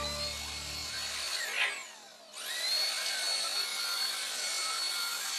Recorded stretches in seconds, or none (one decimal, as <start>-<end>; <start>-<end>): 0.0-3.7; 4.5-5.4